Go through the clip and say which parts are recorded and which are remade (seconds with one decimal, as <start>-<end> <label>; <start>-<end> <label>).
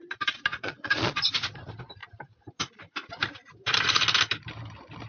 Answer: 0.0-0.5 recorded; 0.5-1.3 remade; 1.3-5.1 recorded